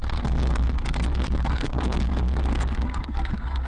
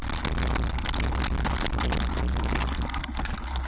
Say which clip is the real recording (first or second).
second